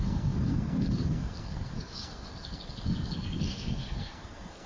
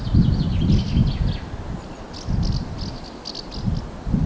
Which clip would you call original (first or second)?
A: second